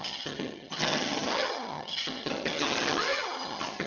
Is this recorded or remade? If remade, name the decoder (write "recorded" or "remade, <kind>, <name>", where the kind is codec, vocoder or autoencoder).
remade, vocoder, HiFi-GAN